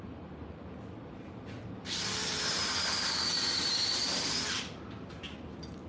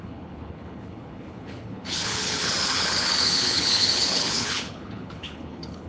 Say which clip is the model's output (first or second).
second